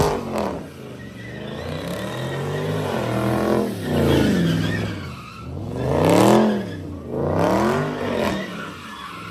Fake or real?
real